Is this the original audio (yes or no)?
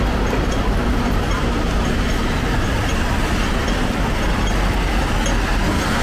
yes